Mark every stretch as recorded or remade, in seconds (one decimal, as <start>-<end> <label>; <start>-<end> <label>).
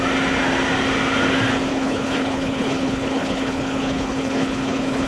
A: 0.0-1.7 recorded; 1.7-5.1 remade